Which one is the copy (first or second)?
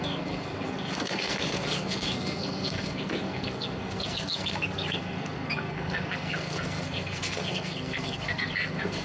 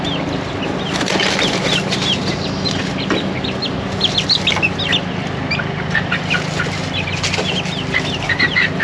first